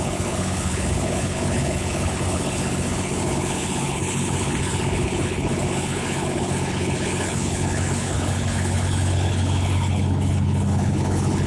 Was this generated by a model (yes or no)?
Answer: yes